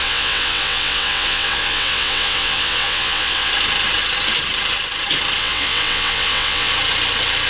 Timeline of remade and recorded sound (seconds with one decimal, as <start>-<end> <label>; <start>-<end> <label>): 0.0-3.5 remade; 3.5-5.4 recorded; 5.4-6.7 remade; 6.7-7.5 recorded